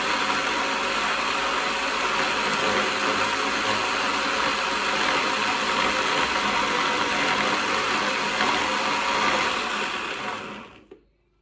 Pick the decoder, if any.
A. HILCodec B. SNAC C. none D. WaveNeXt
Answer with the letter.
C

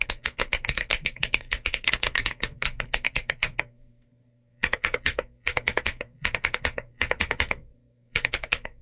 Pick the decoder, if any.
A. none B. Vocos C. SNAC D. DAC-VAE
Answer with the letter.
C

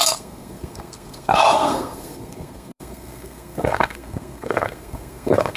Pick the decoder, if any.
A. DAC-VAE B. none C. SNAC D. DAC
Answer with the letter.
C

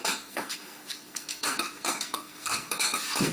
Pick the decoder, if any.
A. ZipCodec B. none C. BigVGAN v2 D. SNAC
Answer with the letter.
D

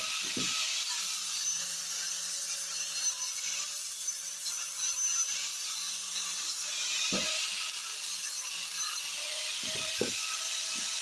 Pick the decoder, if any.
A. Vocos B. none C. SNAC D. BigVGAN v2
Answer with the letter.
B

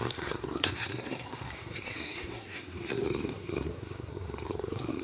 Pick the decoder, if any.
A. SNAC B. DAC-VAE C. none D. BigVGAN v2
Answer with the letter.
A